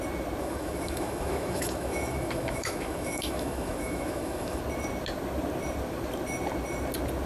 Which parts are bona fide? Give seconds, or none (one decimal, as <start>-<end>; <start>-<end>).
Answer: 0.0-0.4; 4.6-7.3